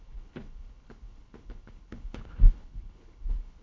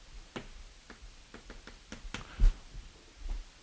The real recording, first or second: second